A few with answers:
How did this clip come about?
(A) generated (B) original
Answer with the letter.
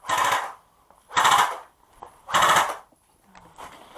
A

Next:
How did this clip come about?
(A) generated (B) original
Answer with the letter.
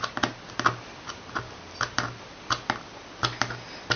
B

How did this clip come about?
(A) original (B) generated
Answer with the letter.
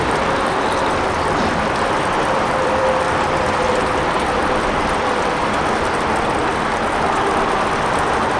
B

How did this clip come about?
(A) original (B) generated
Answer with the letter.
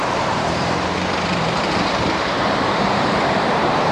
B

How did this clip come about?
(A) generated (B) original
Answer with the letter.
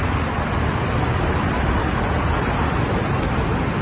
A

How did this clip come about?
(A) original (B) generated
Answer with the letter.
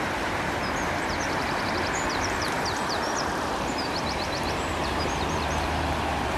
B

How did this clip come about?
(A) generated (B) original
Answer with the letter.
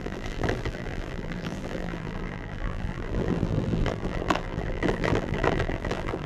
A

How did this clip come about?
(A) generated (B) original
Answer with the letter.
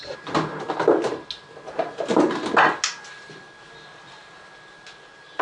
B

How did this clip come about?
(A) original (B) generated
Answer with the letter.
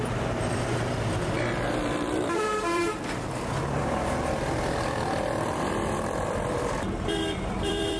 B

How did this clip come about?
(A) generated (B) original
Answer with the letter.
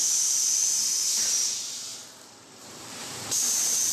A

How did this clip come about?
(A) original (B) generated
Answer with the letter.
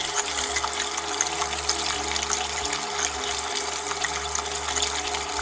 A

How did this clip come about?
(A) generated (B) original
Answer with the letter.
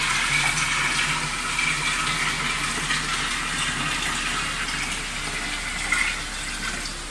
B